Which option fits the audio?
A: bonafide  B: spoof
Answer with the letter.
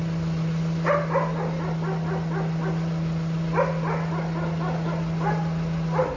A